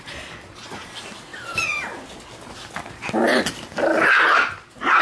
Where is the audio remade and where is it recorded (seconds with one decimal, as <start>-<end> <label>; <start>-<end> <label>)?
0.0-5.0 recorded